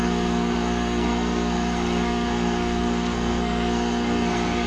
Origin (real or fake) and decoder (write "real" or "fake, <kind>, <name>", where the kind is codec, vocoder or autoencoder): fake, codec, SNAC